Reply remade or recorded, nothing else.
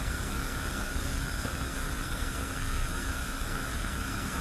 remade